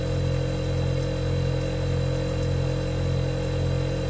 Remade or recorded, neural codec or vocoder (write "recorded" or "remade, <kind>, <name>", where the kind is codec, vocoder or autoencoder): recorded